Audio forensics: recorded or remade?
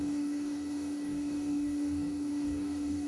remade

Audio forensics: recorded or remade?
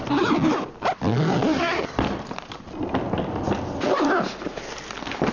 recorded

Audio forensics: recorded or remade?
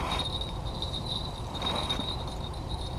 remade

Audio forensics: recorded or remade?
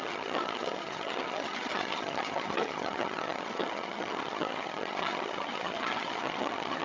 remade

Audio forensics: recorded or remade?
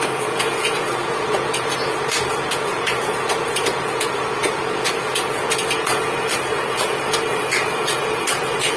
remade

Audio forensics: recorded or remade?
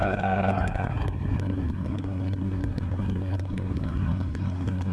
remade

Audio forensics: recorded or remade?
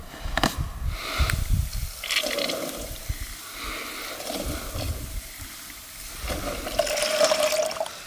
recorded